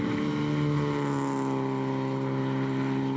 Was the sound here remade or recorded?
recorded